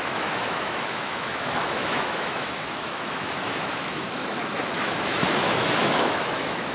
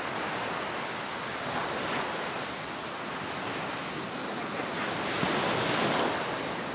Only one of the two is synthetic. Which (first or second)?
first